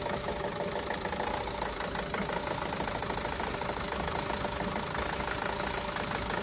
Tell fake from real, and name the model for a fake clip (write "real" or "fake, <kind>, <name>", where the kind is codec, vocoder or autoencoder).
real